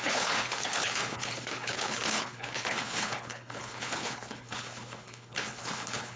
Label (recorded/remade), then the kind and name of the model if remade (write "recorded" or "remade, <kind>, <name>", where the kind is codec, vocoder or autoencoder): remade, codec, HILCodec